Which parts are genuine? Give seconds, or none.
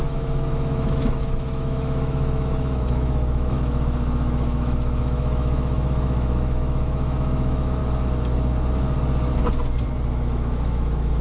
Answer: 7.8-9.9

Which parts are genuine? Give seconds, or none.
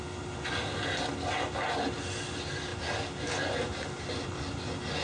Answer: 0.0-5.0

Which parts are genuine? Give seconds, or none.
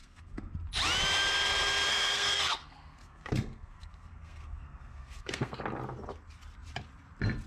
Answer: 0.5-1.9; 5.6-7.5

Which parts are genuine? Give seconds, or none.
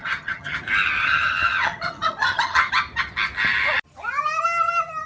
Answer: 0.6-1.0; 2.7-5.1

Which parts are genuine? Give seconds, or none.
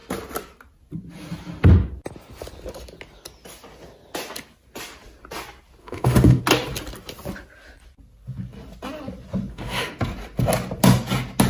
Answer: 0.0-5.8; 6.4-9.5; 10.0-11.5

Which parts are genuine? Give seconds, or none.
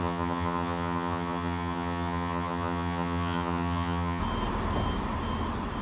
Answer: 4.2-5.8